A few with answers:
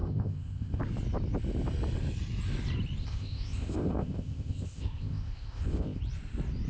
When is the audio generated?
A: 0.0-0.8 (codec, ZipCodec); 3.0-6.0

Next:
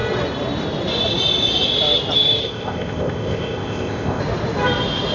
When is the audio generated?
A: 2.4-4.2 (codec, ZipCodec)

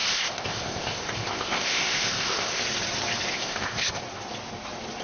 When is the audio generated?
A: 0.0-2.6 (codec, ZipCodec); 3.3-4.0

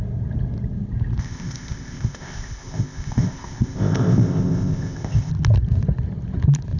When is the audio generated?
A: 1.2-5.3 (codec, ZipCodec)